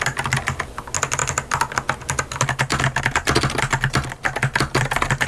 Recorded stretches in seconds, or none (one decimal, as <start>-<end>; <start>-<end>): 0.0-5.3